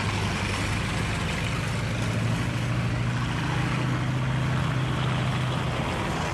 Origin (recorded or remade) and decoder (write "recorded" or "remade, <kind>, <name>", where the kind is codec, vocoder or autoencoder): recorded